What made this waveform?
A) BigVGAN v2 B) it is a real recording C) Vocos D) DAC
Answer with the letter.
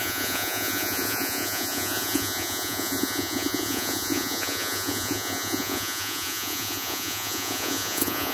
C